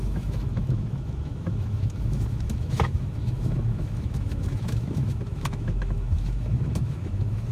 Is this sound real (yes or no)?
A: no